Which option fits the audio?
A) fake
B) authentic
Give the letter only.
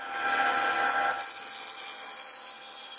B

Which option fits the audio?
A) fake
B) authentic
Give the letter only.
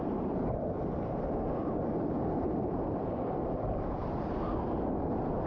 B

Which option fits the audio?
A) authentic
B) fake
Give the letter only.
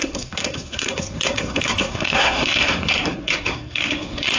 B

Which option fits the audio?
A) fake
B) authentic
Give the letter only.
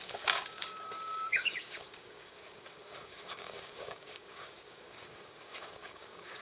A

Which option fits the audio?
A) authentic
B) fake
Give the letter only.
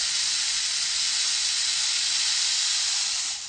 A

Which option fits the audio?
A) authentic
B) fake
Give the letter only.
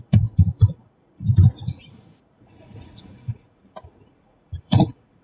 B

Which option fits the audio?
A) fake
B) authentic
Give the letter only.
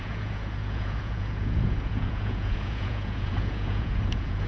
A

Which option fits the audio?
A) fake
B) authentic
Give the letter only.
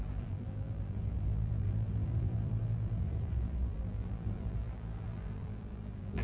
A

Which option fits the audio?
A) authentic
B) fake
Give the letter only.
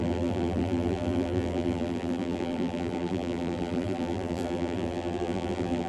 B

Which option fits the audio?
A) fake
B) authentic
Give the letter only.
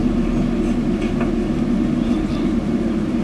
B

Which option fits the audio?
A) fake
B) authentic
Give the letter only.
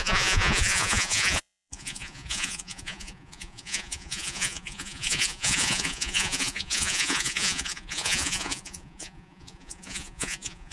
A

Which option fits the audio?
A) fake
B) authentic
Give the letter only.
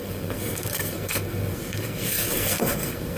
A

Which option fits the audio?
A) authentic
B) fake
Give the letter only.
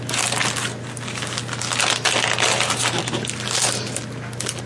A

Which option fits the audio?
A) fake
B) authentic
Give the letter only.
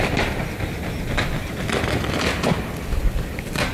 B